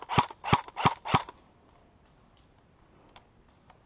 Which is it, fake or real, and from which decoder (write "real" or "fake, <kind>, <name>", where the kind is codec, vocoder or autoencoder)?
real